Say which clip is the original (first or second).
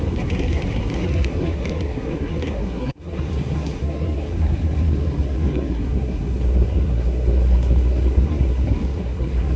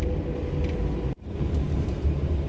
second